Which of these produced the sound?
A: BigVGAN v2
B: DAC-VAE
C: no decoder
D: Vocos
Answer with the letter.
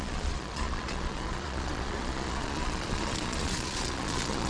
D